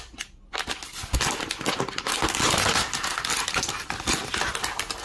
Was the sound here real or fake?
real